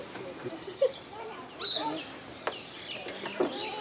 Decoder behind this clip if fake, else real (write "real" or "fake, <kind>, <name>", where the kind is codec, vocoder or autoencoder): real